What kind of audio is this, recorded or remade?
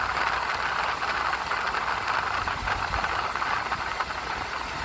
recorded